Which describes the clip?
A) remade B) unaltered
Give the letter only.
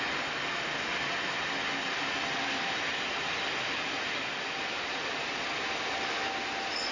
B